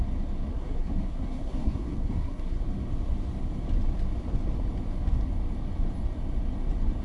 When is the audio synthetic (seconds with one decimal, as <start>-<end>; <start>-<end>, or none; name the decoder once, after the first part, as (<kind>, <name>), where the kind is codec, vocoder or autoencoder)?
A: 0.5-2.6 (codec, SNAC)